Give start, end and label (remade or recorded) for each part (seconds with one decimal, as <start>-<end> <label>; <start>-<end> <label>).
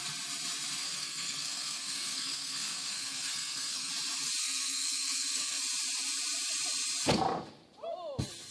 0.0-0.8 recorded; 0.8-3.9 remade; 3.9-4.4 recorded; 4.4-5.6 remade; 5.6-8.5 recorded